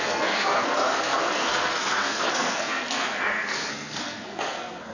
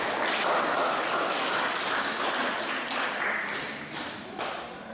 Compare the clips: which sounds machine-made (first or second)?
first